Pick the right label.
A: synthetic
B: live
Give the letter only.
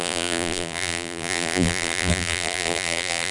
A